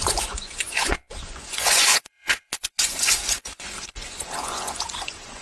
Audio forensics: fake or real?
fake